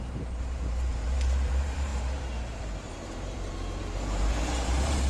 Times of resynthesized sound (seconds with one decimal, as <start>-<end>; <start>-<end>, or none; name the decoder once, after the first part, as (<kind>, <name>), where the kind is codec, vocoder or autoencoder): 0.0-5.1 (vocoder, BigVGAN v2)